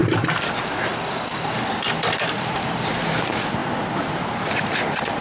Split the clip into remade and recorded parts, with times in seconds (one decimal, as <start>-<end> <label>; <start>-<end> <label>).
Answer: 0.0-2.9 remade; 2.9-5.2 recorded